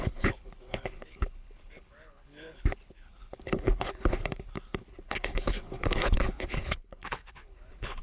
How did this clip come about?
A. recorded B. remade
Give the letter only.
B